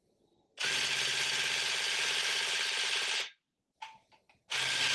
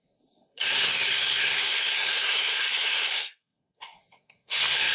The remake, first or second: second